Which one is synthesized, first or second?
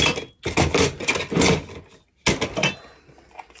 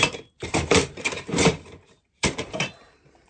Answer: second